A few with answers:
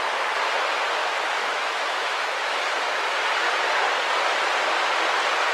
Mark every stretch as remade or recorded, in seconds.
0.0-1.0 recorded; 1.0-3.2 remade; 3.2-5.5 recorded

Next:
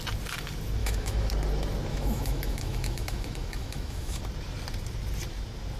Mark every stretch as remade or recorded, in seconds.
0.0-0.8 recorded; 0.8-1.3 remade; 1.3-1.9 recorded; 1.9-4.2 remade; 4.2-5.8 recorded

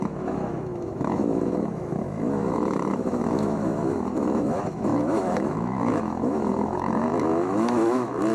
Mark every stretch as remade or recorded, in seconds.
0.0-8.3 remade

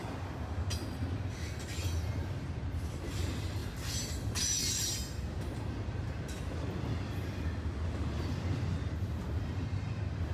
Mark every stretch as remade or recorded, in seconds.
0.0-10.3 recorded

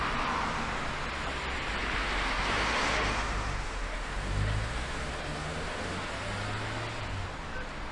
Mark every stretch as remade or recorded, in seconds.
0.0-2.0 recorded; 2.0-6.1 remade; 6.1-7.9 recorded